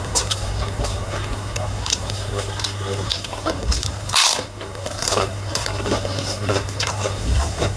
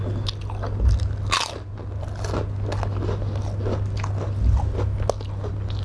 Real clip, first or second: second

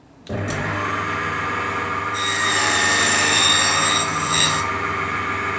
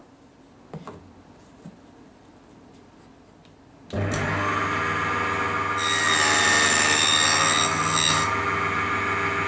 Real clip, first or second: second